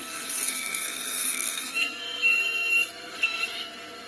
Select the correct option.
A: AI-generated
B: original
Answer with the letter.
A